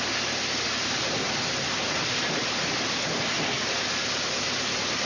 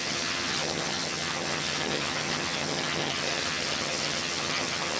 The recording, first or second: first